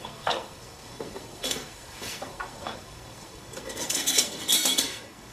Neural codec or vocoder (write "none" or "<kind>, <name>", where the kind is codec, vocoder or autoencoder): codec, SNAC